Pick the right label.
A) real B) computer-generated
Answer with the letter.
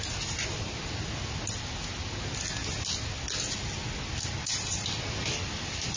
A